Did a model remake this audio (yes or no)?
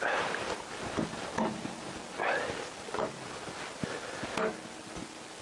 no